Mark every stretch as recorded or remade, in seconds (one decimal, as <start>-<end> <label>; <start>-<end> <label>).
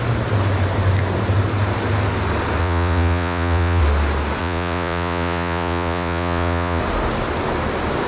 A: 0.0-2.6 recorded; 2.6-3.8 remade; 3.8-4.4 recorded; 4.4-6.8 remade; 6.8-8.1 recorded